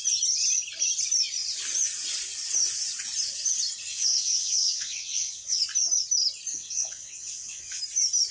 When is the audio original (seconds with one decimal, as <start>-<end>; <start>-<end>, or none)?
0.0-3.9; 5.6-6.5; 7.8-8.3